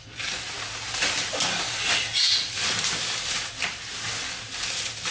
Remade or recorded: recorded